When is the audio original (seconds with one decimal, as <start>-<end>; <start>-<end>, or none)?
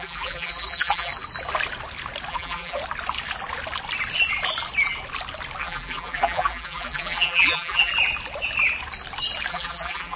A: 1.1-2.3; 2.8-5.6; 7.9-9.5